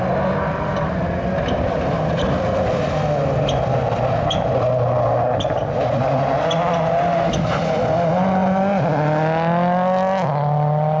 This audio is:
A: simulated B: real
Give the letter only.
B